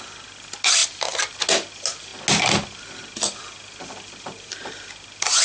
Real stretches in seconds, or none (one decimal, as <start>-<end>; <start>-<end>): 0.0-5.4

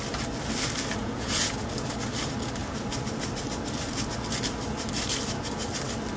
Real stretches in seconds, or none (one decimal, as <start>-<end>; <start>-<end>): 0.0-1.0; 1.7-6.2

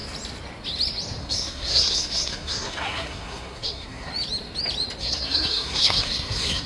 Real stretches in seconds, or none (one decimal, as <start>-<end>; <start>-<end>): 0.0-1.2; 4.1-5.0